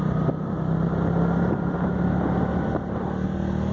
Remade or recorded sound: recorded